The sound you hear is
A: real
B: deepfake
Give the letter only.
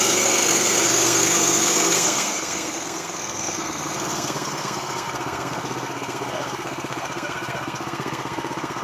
B